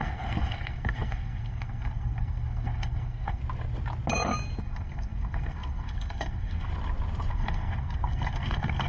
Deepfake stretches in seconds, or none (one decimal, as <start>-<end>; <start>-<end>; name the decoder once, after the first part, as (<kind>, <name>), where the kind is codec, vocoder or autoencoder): 0.0-3.4 (codec, SNAC); 4.6-6.7; 7.3-8.9